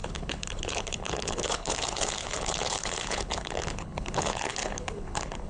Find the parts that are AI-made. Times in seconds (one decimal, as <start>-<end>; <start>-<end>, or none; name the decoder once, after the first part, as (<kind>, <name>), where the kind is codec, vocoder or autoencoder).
0.0-5.5 (codec, HILCodec)